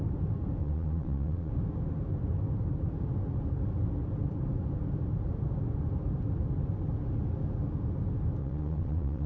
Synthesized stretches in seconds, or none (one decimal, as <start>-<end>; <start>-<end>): 0.6-1.5; 8.4-9.3